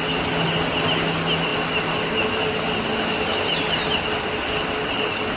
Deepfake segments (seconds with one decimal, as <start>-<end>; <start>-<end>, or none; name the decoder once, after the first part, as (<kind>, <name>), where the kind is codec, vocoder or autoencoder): none